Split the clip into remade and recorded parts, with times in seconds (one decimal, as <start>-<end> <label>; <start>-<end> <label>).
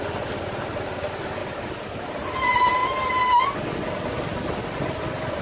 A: 0.0-1.4 recorded; 1.4-2.4 remade; 2.4-5.4 recorded